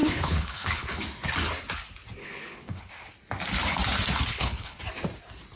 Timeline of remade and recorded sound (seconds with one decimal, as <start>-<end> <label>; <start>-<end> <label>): 0.0-1.0 remade; 1.0-2.2 recorded; 2.2-2.9 remade; 2.9-4.3 recorded; 4.3-4.8 remade; 4.8-5.6 recorded